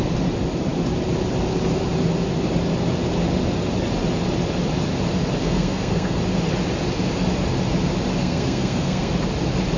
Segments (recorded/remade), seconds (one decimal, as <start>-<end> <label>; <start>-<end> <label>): 0.0-5.4 recorded; 5.4-6.2 remade; 6.2-8.2 recorded; 8.2-9.1 remade; 9.1-9.8 recorded